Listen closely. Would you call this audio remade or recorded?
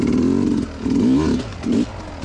recorded